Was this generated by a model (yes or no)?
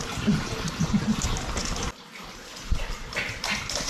no